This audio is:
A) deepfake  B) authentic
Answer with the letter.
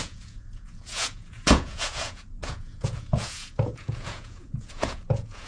A